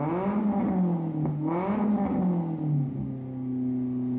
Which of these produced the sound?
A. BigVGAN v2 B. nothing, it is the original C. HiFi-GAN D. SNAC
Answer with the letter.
B